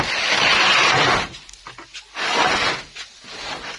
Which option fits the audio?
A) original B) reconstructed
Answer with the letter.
A